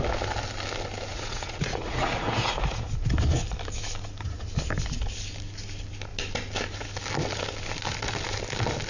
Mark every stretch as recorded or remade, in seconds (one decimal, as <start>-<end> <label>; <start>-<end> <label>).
0.0-1.1 recorded; 1.1-2.9 remade; 2.9-8.9 recorded